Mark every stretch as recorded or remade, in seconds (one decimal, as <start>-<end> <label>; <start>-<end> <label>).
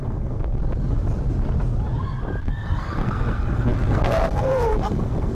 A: 0.0-0.6 remade; 0.6-2.4 recorded; 2.4-5.3 remade